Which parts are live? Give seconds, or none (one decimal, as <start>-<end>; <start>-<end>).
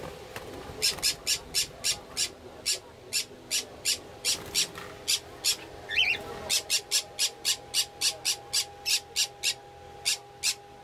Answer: 0.0-10.8